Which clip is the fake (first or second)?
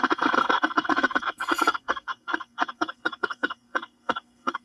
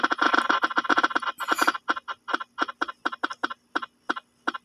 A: first